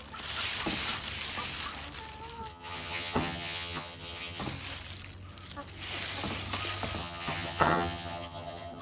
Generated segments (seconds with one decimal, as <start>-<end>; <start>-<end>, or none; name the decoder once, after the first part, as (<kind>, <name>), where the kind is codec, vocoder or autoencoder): 2.5-4.4 (vocoder, HiFi-GAN); 7.0-8.8